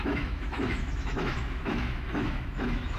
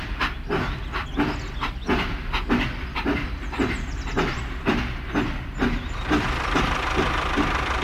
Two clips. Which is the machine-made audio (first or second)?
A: first